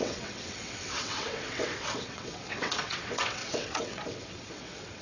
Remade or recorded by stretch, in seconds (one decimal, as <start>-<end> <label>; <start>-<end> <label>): 0.0-5.0 remade

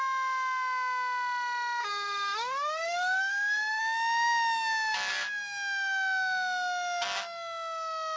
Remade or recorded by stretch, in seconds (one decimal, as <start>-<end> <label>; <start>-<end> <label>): 0.0-1.8 recorded; 1.8-3.8 remade; 3.8-8.2 recorded

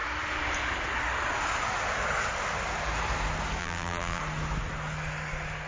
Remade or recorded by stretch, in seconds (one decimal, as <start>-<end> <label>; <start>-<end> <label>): 0.0-3.6 recorded; 3.6-4.2 remade; 4.2-5.7 recorded

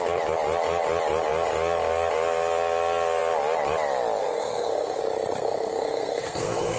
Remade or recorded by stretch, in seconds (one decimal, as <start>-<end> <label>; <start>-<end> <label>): 0.0-4.2 recorded; 4.2-5.0 remade; 5.0-5.4 recorded; 5.4-6.8 remade

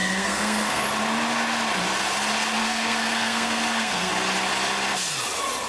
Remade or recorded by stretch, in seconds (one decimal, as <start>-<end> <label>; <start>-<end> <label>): 0.0-0.8 remade; 0.8-2.6 recorded; 2.6-4.1 remade; 4.1-5.7 recorded